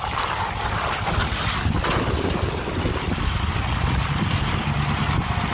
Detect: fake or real real